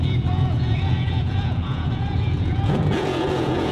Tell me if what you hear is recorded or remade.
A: remade